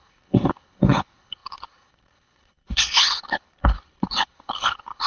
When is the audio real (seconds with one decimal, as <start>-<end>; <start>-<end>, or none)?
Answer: none